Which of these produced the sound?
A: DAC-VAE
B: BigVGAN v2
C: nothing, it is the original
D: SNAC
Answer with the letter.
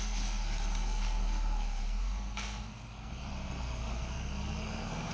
D